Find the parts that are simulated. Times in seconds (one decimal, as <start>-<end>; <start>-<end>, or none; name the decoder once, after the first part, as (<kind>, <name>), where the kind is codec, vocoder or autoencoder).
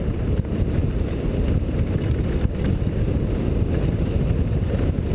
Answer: none